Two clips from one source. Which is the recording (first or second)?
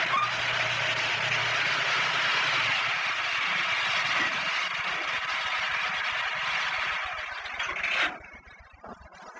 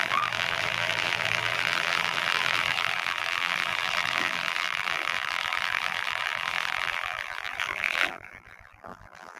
first